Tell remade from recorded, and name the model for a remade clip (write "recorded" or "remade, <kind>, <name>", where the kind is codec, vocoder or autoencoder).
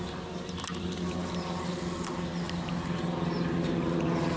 recorded